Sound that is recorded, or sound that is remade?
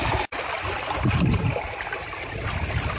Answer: recorded